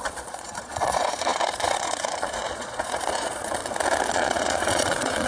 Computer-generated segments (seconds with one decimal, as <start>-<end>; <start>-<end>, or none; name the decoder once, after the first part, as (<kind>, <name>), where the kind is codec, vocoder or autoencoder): 0.0-3.6 (vocoder, Vocos); 4.1-5.3

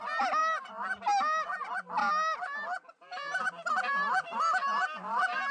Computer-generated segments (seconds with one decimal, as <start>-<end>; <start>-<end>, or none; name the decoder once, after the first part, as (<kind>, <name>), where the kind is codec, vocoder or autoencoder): none

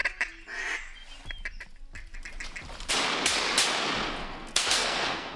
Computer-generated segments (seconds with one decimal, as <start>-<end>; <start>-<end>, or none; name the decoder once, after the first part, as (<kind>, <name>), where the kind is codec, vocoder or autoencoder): 4.2-5.4 (codec, SNAC)

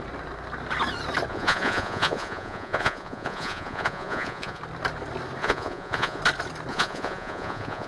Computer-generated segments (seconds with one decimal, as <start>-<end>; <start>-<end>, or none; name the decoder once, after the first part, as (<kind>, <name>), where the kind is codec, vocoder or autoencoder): 1.3-4.6 (vocoder, Vocos); 5.4-6.2; 6.7-7.9

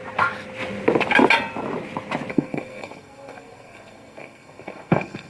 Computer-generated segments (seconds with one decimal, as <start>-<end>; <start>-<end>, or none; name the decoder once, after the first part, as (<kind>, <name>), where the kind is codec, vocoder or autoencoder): 2.3-5.3 (codec, SNAC)

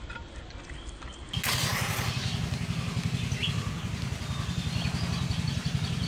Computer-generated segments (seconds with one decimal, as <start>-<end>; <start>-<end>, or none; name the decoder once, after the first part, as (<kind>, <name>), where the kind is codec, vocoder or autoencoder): none